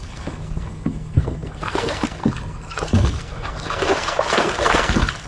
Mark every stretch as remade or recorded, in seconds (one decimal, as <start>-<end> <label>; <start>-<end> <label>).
0.0-5.3 remade